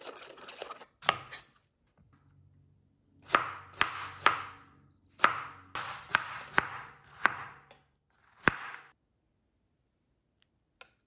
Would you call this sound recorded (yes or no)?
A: yes